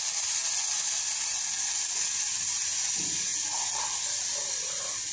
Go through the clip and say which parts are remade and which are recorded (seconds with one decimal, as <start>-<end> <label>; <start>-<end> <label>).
0.0-5.1 recorded